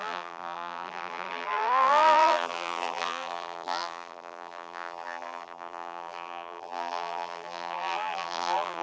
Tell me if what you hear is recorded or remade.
remade